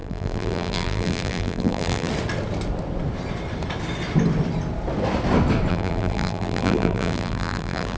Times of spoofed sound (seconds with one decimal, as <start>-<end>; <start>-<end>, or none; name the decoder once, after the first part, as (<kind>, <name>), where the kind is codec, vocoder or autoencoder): 0.0-2.1 (vocoder, BigVGAN v2); 5.7-8.0